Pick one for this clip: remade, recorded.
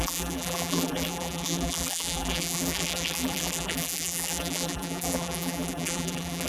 remade